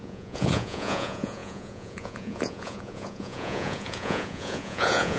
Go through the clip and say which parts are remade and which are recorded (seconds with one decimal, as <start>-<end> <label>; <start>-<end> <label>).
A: 0.0-5.2 remade

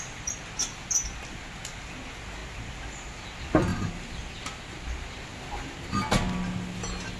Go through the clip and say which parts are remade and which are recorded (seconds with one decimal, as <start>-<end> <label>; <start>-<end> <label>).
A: 0.0-7.2 recorded

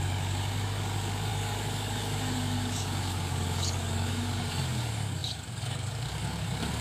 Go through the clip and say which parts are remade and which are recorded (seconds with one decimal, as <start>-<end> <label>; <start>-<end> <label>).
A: 0.0-6.8 remade

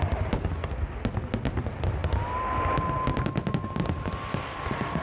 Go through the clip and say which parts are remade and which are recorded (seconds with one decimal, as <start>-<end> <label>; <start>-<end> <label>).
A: 0.0-5.0 recorded

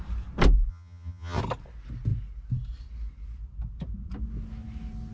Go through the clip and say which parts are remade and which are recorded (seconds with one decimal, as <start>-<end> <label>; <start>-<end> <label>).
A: 0.0-0.7 recorded; 0.7-1.4 remade; 1.4-5.1 recorded

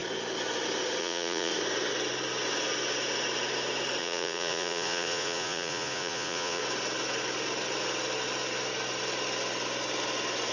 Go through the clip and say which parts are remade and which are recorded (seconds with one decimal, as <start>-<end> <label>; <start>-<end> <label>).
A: 0.0-1.0 recorded; 1.0-1.5 remade; 1.5-4.0 recorded; 4.0-6.6 remade; 6.6-10.5 recorded

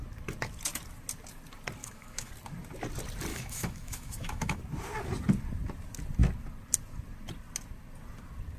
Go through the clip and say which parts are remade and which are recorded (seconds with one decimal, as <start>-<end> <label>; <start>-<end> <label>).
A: 0.0-1.8 recorded; 1.8-2.3 remade; 2.3-3.3 recorded; 3.3-4.6 remade; 4.6-8.6 recorded